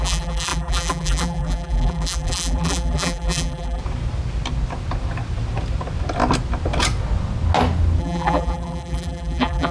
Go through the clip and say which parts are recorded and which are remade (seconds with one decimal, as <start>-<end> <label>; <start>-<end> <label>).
0.0-3.8 remade; 3.8-8.0 recorded; 8.0-9.7 remade